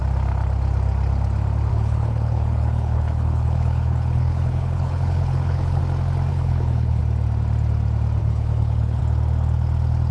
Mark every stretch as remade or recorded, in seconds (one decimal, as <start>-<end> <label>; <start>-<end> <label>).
0.0-1.7 recorded; 1.7-5.8 remade; 5.8-6.3 recorded; 6.3-7.0 remade; 7.0-8.2 recorded; 8.2-9.0 remade; 9.0-10.1 recorded